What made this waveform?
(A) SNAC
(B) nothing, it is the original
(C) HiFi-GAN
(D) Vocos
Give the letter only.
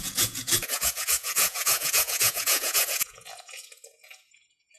D